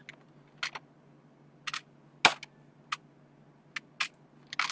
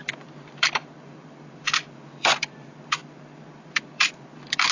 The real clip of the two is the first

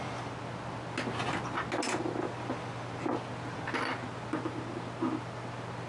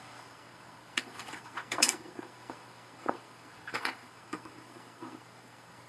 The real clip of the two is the first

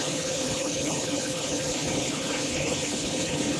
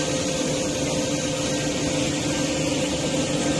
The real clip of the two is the second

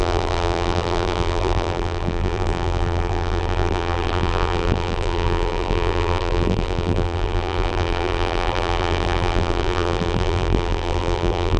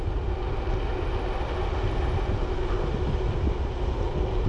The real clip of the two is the second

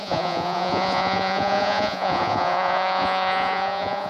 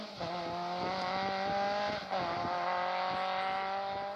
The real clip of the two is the second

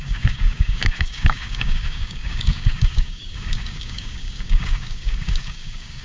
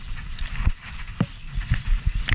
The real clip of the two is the second